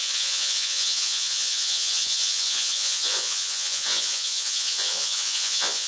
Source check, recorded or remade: remade